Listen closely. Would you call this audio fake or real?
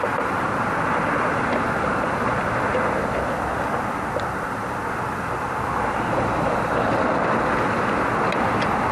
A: real